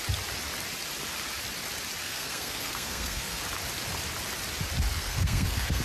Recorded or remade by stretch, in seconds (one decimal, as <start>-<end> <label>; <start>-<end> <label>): 0.0-2.0 recorded; 2.0-3.4 remade; 3.4-4.9 recorded; 4.9-5.8 remade